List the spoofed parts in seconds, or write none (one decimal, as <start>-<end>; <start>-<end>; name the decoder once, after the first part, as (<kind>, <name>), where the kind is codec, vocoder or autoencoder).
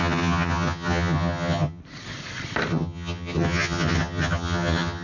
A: 0.0-1.8 (vocoder, HiFi-GAN); 2.7-5.0